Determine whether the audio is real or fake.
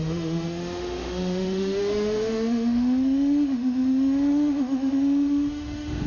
fake